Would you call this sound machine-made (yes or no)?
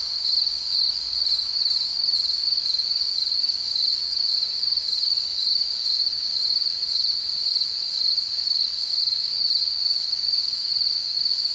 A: yes